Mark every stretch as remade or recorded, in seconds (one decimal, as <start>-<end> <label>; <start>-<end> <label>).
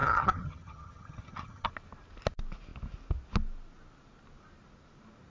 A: 0.0-1.7 remade; 1.7-5.3 recorded